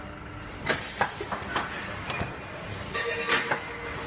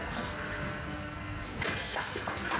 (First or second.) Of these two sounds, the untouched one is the first